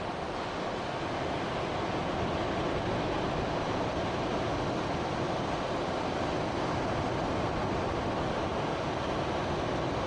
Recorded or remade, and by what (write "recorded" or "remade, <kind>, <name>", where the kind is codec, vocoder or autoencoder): recorded